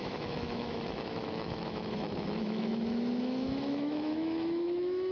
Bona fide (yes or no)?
no